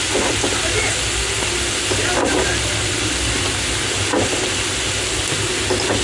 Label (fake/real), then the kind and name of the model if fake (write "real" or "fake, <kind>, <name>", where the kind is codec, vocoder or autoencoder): real